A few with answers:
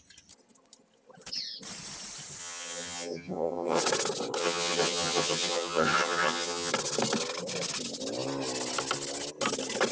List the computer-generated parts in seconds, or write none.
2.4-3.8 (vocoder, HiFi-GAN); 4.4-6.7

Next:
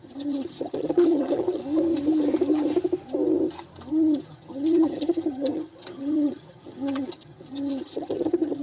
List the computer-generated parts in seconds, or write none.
0.0-1.6 (vocoder, HiFi-GAN); 3.9-8.6